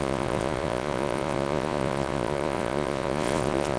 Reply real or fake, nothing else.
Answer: fake